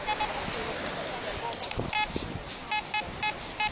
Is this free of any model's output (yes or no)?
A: yes